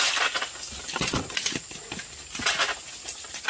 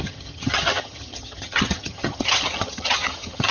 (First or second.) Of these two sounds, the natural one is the first